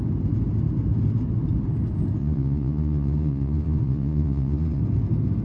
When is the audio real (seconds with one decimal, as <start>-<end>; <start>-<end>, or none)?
0.0-2.2; 4.8-5.4